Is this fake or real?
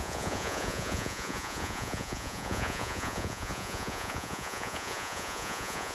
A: fake